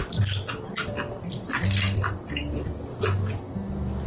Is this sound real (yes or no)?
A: yes